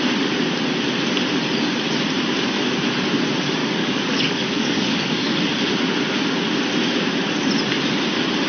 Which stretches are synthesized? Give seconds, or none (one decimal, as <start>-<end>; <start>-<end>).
3.6-5.4